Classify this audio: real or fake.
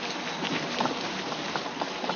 real